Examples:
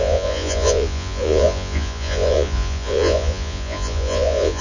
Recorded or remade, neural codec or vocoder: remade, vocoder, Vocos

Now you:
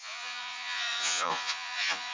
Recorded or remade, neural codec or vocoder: remade, vocoder, Vocos